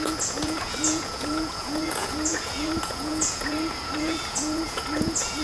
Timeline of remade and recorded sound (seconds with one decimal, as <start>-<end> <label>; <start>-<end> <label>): 0.0-5.4 remade